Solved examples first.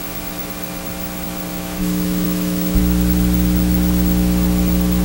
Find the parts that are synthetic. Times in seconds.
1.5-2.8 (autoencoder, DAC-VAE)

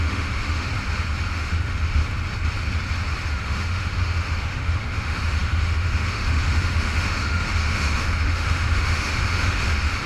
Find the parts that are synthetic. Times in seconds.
0.0-0.7 (autoencoder, DAC-VAE); 1.3-2.0; 3.3-10.1

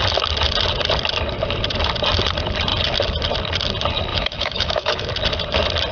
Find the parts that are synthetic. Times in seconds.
4.1-5.1 (autoencoder, DAC-VAE)

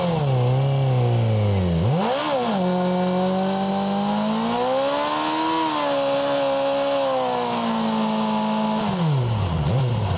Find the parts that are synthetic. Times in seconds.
none

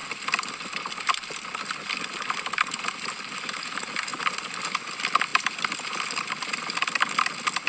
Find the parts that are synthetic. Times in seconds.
none

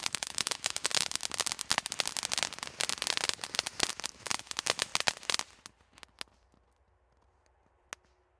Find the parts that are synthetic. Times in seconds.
0.0-1.2 (autoencoder, DAC-VAE); 4.1-4.9

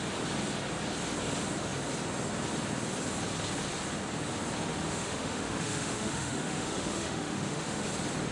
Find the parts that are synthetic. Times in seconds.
4.7-7.8 (autoencoder, DAC-VAE)

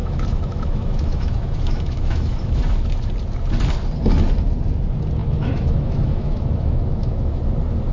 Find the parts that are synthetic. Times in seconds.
0.0-2.6 (autoencoder, DAC-VAE); 5.2-7.4